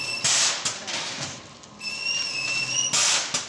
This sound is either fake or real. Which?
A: real